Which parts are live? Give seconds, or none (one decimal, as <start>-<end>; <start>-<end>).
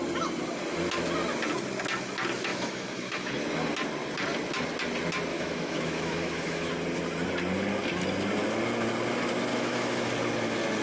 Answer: 0.0-2.5; 3.3-5.3; 6.7-9.5; 10.1-10.8